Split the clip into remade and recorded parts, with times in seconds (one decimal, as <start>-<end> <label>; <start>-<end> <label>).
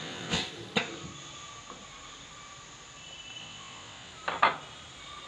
0.0-0.4 remade; 0.4-3.4 recorded; 3.4-4.1 remade; 4.1-5.3 recorded